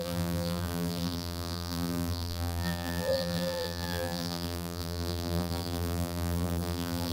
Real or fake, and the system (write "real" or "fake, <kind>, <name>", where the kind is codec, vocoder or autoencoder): fake, vocoder, BigVGAN v2